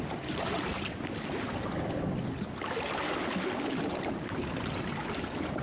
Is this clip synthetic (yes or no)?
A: no